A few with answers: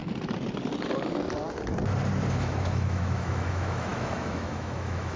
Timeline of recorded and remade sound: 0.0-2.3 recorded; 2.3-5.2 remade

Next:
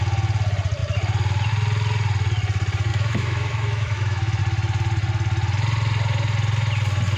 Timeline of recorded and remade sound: 0.0-2.9 recorded; 2.9-4.4 remade; 4.4-7.2 recorded

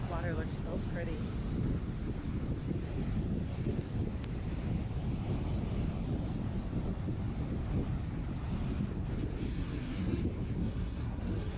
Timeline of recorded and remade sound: 0.0-9.5 recorded; 9.5-10.2 remade; 10.2-10.6 recorded; 10.6-11.6 remade

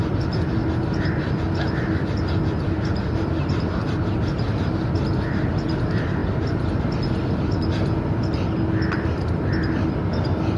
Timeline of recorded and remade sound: 0.0-10.6 recorded

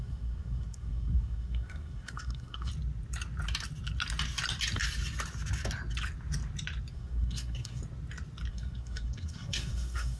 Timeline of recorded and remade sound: 0.0-2.7 remade; 2.7-6.9 recorded; 6.9-7.8 remade; 7.8-8.5 recorded; 8.5-10.2 remade